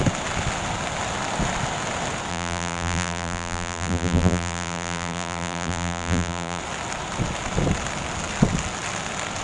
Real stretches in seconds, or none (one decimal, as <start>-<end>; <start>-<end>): 0.0-2.3; 6.6-9.4